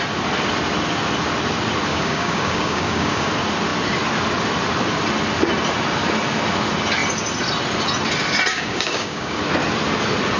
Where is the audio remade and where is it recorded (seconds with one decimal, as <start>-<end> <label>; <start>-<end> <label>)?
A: 0.0-1.9 recorded; 1.9-3.3 remade; 3.3-8.5 recorded; 8.5-9.4 remade; 9.4-10.4 recorded